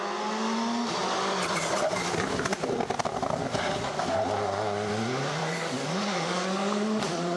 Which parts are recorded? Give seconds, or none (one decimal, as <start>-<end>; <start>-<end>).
0.0-5.4